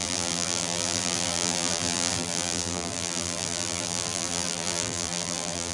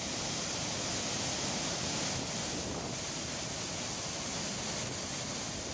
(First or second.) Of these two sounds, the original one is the second